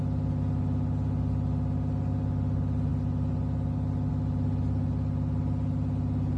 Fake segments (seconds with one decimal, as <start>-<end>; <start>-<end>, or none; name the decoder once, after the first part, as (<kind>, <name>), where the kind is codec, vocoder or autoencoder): none